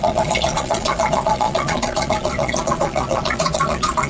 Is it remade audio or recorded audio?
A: remade